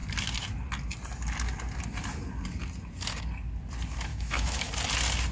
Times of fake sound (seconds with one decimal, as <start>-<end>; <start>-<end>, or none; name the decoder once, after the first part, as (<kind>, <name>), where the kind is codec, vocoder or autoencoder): 4.1-4.7 (autoencoder, DAC-VAE)